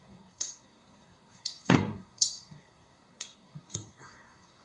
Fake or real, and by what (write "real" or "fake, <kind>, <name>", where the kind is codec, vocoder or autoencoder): fake, codec, SNAC